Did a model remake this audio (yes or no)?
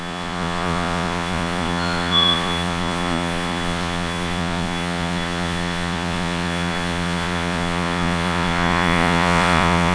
yes